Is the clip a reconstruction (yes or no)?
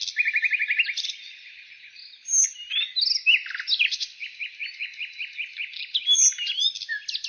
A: no